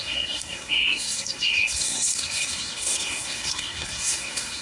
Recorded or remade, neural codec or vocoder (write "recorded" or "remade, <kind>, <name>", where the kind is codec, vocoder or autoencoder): remade, codec, SNAC